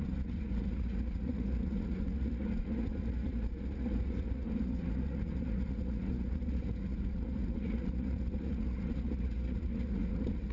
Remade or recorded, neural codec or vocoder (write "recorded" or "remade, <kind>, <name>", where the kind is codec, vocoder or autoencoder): remade, vocoder, Vocos